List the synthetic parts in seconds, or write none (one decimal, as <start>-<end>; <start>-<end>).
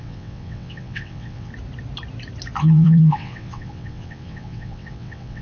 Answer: 0.0-1.5; 2.6-5.4